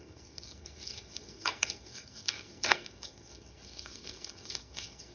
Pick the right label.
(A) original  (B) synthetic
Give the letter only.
B